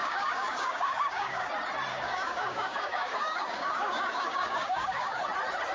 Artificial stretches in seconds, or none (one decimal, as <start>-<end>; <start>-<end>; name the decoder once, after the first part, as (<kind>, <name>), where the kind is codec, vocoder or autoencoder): 0.0-1.5 (codec, DAC); 1.9-5.2